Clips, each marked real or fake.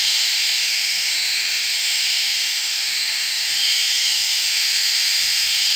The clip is fake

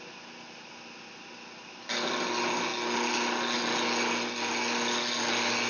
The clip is real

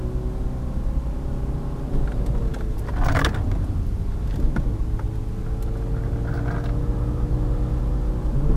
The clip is real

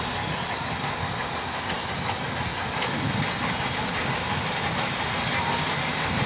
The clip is real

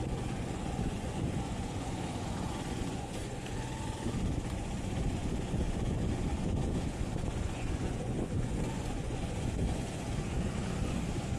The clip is fake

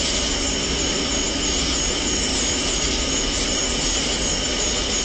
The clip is real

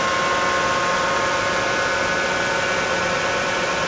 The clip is real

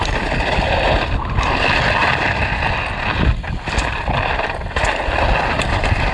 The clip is real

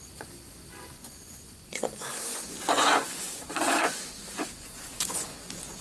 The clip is fake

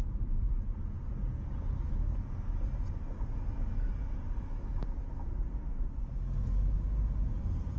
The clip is real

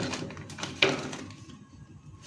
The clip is real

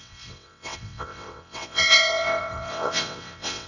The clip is fake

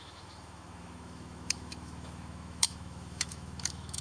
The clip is fake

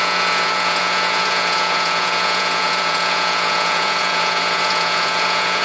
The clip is fake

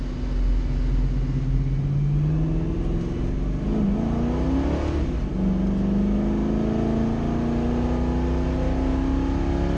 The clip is real